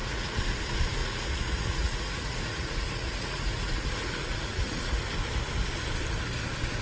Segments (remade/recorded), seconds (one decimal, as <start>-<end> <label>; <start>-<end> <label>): 0.0-0.5 remade; 0.5-1.0 recorded; 1.0-5.1 remade; 5.1-6.8 recorded